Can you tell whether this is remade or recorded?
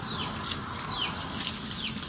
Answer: recorded